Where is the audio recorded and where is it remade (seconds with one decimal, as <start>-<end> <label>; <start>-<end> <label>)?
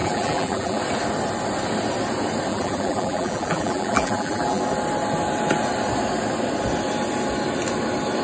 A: 0.0-0.8 remade; 0.8-2.5 recorded; 2.5-4.6 remade; 4.6-8.2 recorded